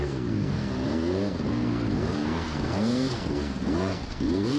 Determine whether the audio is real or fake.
fake